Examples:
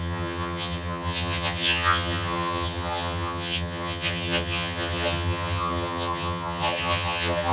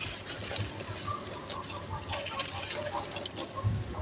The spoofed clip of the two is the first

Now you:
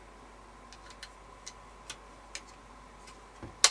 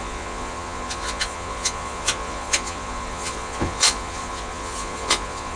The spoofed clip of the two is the second